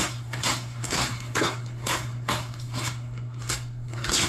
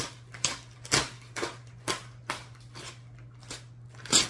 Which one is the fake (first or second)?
first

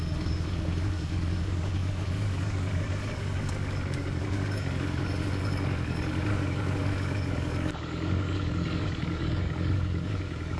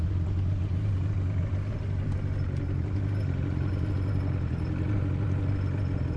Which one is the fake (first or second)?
first